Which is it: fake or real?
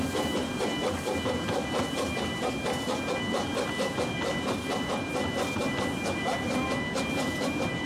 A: real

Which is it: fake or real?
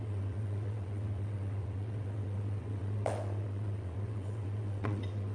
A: fake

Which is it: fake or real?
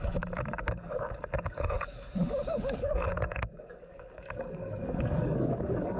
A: fake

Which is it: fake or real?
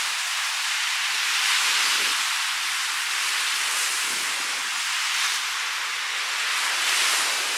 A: real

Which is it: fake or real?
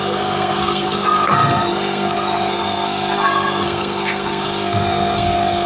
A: fake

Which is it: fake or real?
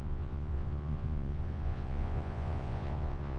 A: fake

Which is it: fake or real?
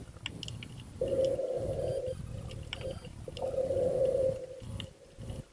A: real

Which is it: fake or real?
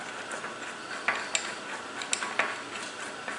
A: real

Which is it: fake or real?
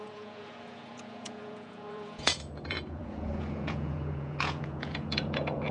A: fake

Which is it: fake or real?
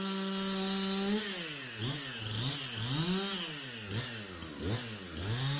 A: real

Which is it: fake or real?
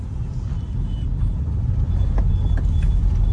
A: real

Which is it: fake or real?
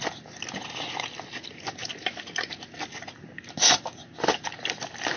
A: real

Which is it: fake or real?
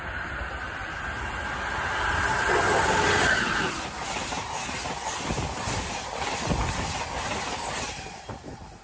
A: real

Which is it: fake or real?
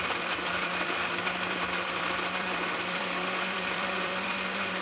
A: fake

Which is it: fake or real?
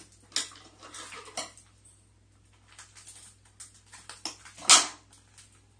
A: real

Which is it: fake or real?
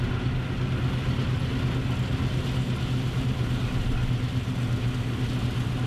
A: real